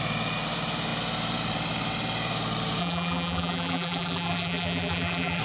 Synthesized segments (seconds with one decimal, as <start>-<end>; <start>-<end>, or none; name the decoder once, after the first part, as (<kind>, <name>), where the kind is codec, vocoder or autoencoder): 2.8-5.4 (vocoder, BigVGAN v2)